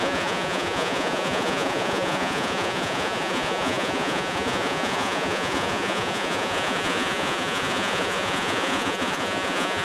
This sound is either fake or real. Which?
fake